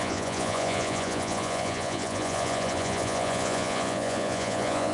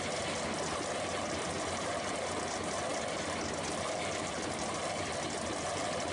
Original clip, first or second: second